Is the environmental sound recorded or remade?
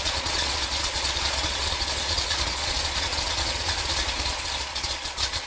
remade